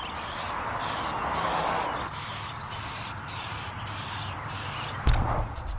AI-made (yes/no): no